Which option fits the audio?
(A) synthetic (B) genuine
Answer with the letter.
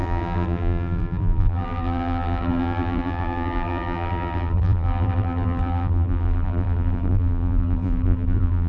A